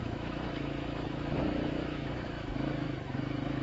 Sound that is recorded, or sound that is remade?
remade